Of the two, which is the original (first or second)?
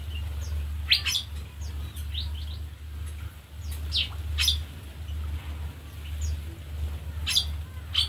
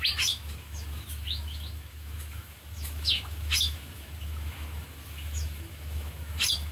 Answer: first